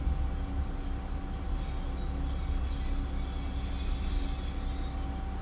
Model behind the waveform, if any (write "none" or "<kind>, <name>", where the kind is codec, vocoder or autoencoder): none